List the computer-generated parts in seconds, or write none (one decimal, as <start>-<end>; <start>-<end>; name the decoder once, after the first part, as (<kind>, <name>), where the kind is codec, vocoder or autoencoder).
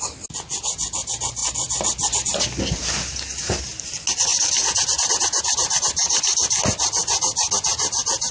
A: none